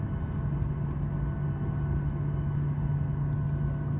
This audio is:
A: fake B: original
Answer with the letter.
B